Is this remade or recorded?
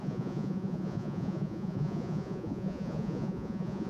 remade